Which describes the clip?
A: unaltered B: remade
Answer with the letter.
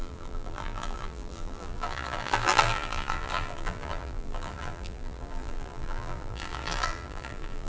B